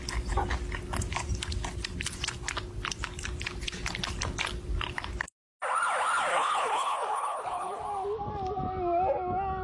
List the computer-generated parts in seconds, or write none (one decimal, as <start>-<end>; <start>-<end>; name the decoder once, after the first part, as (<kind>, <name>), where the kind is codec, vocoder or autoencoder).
6.3-7.8 (codec, HILCodec)